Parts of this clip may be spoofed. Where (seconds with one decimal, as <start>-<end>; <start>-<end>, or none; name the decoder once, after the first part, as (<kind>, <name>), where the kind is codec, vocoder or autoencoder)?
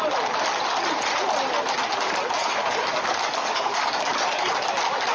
2.4-4.5 (codec, DAC)